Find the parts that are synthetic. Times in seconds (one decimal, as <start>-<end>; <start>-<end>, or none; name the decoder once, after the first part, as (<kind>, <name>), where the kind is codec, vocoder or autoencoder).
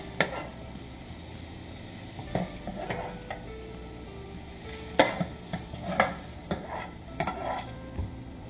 0.5-2.7 (vocoder, BigVGAN v2); 5.3-8.5